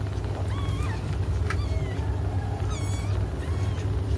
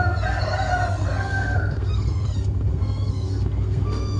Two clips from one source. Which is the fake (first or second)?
second